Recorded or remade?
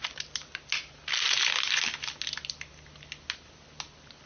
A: recorded